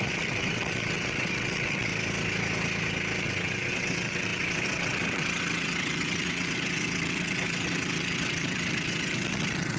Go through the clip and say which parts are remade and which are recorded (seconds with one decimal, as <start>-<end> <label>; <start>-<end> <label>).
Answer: 0.0-1.9 remade; 1.9-3.2 recorded; 3.2-9.8 remade